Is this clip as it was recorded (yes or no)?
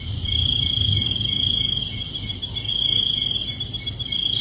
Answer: no